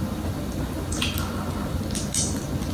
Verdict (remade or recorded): recorded